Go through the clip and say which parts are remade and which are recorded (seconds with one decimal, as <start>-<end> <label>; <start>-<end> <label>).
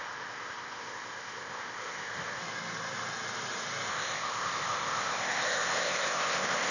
0.0-2.4 remade; 2.4-3.9 recorded; 3.9-6.7 remade